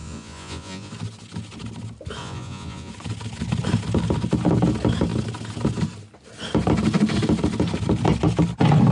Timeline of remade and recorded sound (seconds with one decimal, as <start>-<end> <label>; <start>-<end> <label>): 0.0-0.9 remade; 0.9-2.2 recorded; 2.2-2.9 remade; 2.9-8.9 recorded